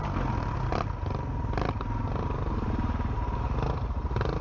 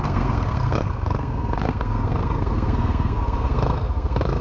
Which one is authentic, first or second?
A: first